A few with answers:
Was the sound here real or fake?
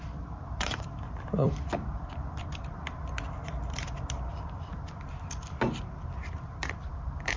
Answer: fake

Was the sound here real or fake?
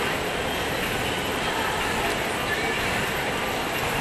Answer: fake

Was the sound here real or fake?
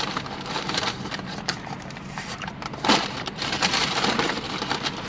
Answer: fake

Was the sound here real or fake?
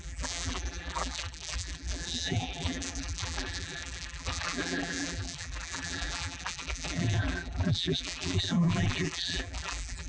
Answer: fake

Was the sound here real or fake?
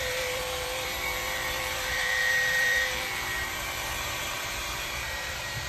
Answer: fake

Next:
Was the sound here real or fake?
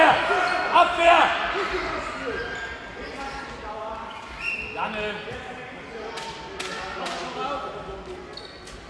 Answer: real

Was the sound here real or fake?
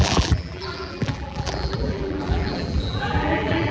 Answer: fake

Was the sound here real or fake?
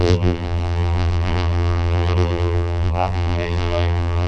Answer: fake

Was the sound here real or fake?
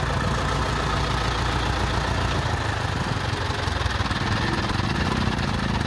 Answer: real